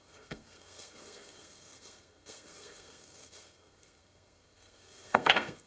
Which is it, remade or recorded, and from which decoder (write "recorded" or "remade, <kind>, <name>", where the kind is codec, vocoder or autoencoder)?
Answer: remade, codec, SNAC